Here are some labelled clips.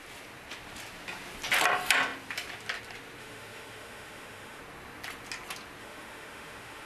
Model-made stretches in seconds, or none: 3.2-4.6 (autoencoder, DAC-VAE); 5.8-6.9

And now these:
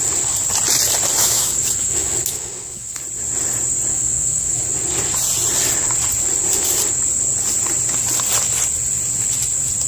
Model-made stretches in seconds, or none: 1.2-3.0 (autoencoder, DAC-VAE); 3.9-4.6

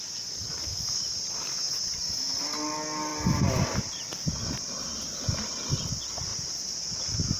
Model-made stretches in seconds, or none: none

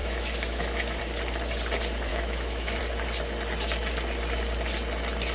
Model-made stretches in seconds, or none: 0.0-1.0 (autoencoder, DAC-VAE); 2.1-2.8